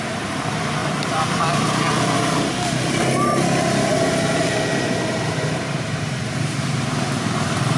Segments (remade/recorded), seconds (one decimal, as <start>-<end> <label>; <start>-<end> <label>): 0.0-0.8 remade; 0.8-5.3 recorded; 5.3-7.8 remade